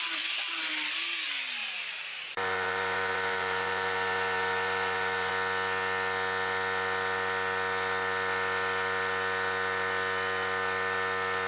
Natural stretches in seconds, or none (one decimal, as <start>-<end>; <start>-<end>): 0.0-1.6; 5.3-11.5